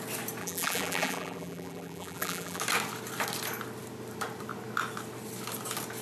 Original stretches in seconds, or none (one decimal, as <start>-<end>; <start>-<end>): 0.0-0.4; 2.6-6.0